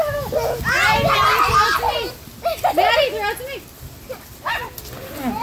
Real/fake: real